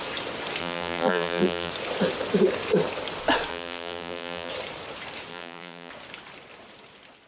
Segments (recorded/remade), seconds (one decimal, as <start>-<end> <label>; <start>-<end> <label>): 0.0-0.6 recorded; 0.6-1.7 remade; 1.7-3.5 recorded; 3.5-4.5 remade; 4.5-5.3 recorded; 5.3-5.9 remade; 5.9-7.3 recorded